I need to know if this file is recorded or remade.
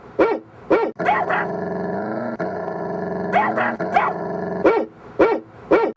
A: recorded